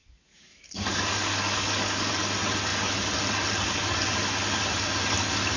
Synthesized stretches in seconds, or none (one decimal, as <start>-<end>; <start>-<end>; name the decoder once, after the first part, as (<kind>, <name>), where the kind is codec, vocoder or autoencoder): 0.0-2.1 (codec, DAC)